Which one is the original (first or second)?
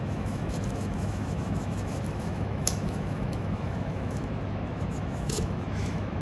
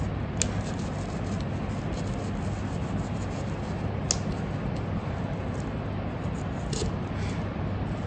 second